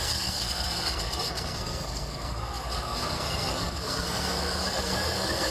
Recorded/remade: remade